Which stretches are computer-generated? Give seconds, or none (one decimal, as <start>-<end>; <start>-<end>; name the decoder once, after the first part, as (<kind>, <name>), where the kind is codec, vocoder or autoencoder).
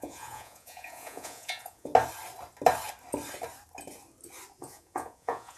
0.0-1.9 (vocoder, Vocos); 4.6-5.6